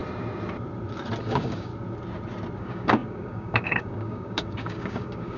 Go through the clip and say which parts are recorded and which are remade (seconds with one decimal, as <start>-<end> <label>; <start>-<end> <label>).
0.0-1.2 recorded; 1.2-1.7 remade; 1.7-2.6 recorded; 2.6-5.4 remade